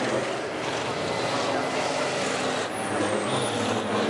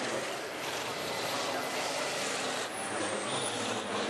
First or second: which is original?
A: first